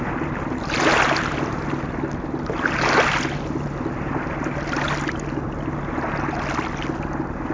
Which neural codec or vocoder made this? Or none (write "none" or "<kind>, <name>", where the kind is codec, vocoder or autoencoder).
none